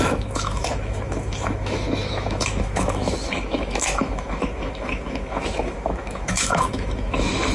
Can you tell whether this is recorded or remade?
remade